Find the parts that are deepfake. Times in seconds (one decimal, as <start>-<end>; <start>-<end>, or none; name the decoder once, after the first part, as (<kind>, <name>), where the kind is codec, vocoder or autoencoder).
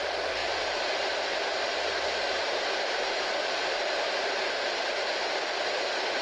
0.4-4.0 (vocoder, BigVGAN v2)